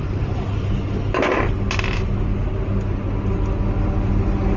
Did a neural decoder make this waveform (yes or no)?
no